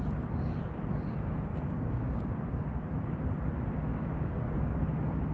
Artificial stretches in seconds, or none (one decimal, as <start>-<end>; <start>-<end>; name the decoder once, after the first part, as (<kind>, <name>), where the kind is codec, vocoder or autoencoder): 1.5-2.4 (codec, DAC); 3.9-4.8